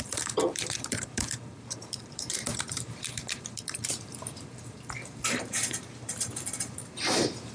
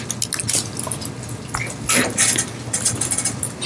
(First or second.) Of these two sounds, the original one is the second